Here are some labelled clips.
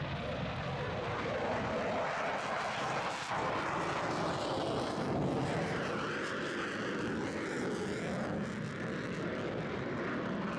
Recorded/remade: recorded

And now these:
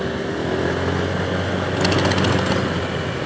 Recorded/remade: recorded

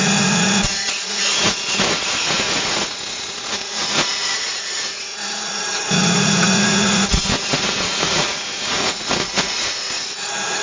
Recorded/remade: remade